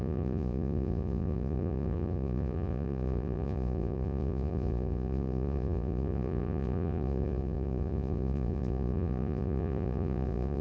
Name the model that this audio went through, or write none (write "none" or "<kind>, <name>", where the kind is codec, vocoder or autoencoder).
vocoder, Vocos